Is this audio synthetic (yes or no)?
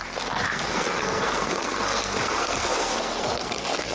yes